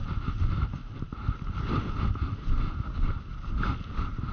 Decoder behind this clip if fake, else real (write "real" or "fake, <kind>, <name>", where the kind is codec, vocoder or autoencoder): real